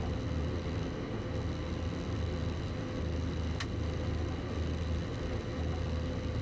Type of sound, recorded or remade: recorded